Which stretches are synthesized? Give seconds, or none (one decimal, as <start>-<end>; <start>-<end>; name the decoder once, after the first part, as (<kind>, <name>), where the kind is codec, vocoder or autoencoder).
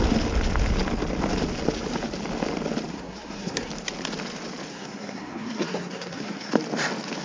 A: 2.9-3.7 (codec, SNAC); 4.7-6.5